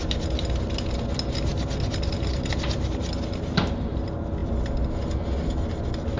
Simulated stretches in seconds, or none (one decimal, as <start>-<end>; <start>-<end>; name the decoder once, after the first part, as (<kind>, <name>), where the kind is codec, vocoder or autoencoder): none